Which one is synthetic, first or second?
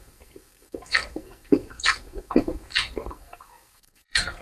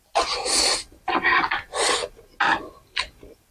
first